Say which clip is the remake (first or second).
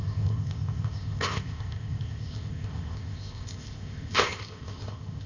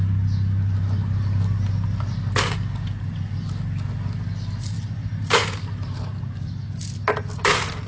first